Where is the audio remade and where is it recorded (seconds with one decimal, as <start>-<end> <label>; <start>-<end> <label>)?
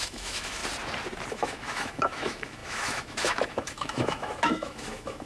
0.0-0.6 remade; 0.6-1.3 recorded; 1.3-5.3 remade